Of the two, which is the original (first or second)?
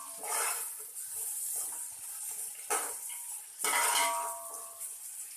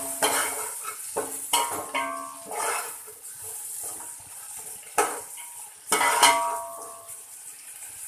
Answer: second